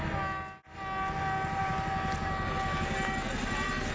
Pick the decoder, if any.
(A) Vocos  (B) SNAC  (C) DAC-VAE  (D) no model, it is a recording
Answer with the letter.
D